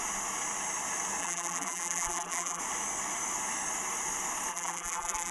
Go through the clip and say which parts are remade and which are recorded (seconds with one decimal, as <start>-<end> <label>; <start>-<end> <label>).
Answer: 0.0-1.2 recorded; 1.2-2.6 remade; 2.6-4.5 recorded; 4.5-5.3 remade